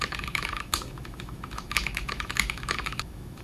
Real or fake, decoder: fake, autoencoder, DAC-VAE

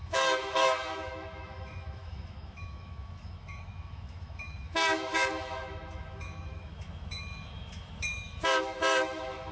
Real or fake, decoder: fake, autoencoder, DAC-VAE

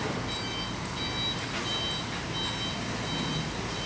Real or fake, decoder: real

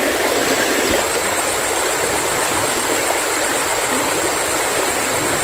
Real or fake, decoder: real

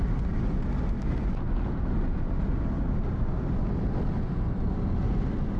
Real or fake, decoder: real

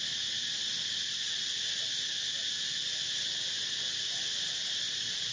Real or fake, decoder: real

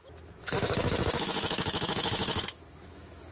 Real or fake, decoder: fake, autoencoder, DAC-VAE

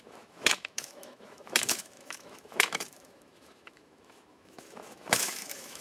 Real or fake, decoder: fake, autoencoder, DAC-VAE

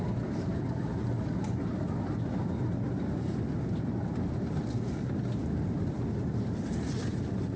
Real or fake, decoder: real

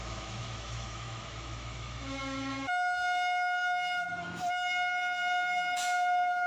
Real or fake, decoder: fake, autoencoder, DAC-VAE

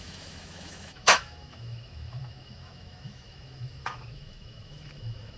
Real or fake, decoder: fake, autoencoder, DAC-VAE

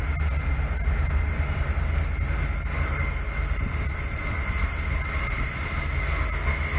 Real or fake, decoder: real